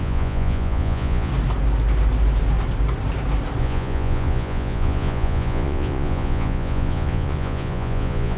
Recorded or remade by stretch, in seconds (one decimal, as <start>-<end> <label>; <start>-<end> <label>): 0.0-1.3 remade; 1.3-3.6 recorded; 3.6-8.4 remade